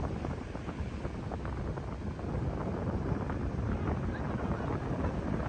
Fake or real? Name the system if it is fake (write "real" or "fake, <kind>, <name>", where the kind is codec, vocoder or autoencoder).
real